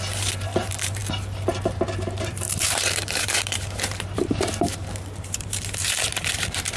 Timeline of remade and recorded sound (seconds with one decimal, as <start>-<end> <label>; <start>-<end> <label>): 0.0-6.8 remade